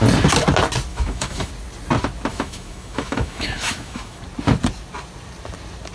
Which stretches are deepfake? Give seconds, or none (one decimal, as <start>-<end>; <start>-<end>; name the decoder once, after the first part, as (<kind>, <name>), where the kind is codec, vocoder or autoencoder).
0.9-1.5 (autoencoder, DAC-VAE); 2.3-4.2